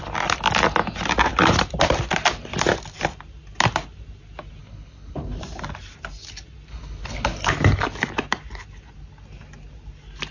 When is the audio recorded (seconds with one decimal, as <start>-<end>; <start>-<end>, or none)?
0.0-4.6; 5.4-6.7; 7.5-10.3